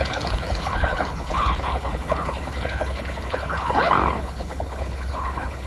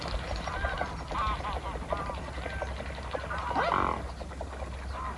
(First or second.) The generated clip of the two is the first